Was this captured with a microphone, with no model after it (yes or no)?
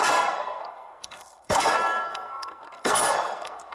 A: no